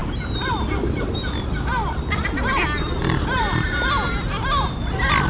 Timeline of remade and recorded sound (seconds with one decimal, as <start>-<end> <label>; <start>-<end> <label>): 0.0-5.3 recorded